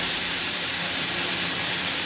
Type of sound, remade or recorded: remade